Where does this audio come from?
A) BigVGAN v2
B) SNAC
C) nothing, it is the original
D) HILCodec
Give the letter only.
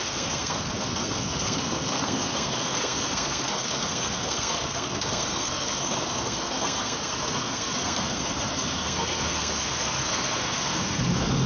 B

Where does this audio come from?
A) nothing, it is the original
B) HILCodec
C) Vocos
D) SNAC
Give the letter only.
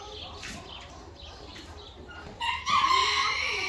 A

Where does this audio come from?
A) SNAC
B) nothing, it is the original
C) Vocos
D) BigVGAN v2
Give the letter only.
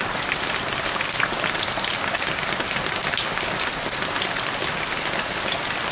B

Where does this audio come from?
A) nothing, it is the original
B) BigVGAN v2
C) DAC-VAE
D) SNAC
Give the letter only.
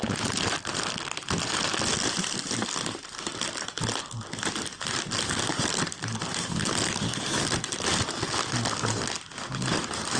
A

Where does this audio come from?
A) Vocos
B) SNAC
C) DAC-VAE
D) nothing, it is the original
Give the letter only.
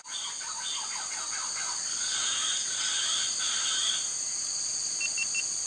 D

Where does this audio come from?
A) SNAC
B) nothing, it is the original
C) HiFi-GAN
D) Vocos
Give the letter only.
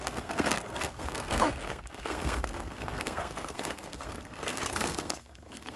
A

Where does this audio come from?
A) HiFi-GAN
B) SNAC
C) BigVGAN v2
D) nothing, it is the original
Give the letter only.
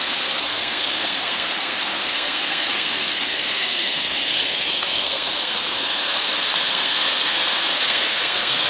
B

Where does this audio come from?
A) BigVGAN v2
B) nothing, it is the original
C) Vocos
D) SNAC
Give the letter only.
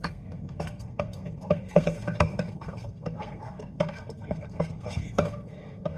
D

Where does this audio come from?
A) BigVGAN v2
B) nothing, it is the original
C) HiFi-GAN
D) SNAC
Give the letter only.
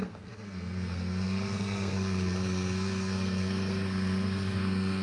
D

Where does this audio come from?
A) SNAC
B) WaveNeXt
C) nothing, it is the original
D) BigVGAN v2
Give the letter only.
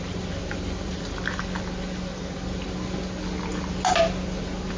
C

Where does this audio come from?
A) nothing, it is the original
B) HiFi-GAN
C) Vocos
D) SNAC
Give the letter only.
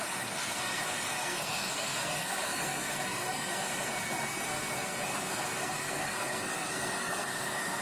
D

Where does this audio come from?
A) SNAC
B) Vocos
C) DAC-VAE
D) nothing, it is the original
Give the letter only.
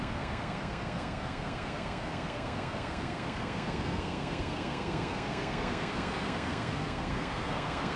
A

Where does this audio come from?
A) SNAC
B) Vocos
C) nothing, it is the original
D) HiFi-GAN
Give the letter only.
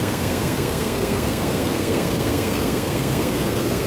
A